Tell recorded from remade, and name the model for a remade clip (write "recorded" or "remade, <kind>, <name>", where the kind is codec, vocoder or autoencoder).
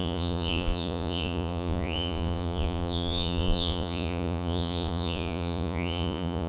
remade, vocoder, Vocos